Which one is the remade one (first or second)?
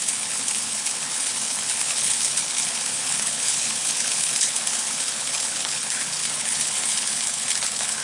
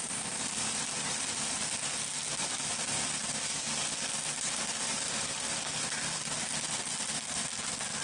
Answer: first